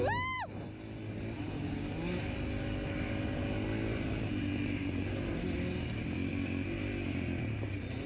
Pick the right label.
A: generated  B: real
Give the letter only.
B